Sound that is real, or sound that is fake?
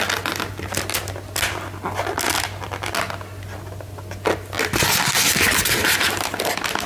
real